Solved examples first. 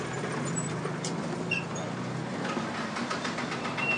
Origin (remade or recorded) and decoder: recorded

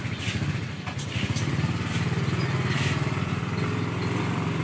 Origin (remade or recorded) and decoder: remade, vocoder, BigVGAN v2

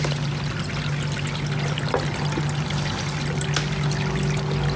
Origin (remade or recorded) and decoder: recorded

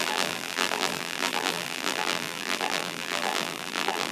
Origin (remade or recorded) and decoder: remade, vocoder, BigVGAN v2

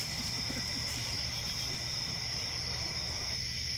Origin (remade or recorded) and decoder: recorded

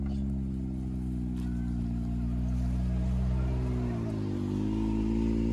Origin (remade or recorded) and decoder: recorded